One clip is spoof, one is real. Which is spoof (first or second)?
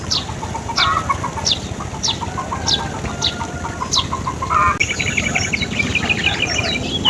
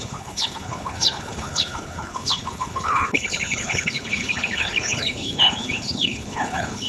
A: second